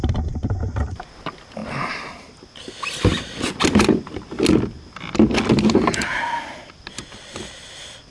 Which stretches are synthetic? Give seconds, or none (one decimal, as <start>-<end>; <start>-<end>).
none